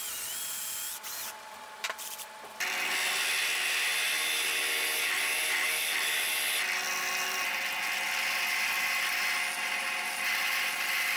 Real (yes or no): yes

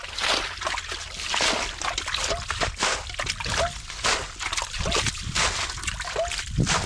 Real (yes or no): yes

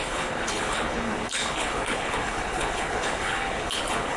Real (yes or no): no